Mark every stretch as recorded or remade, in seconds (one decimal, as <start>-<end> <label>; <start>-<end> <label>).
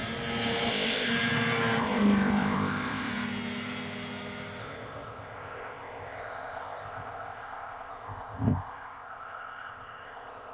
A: 0.0-0.7 recorded; 0.7-1.1 remade; 1.1-1.8 recorded; 1.8-3.1 remade; 3.1-4.6 recorded; 4.6-10.5 remade